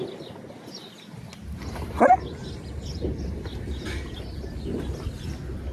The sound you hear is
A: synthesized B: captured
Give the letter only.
B